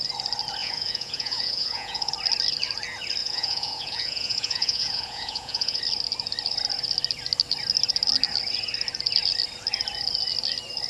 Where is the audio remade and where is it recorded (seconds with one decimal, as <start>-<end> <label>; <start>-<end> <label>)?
0.0-0.6 recorded; 0.6-2.1 remade; 2.1-3.2 recorded; 3.2-5.8 remade; 5.8-10.9 recorded